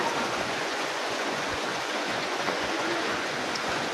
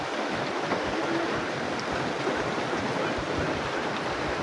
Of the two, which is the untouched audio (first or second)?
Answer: second